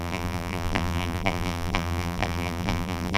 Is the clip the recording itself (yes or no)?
no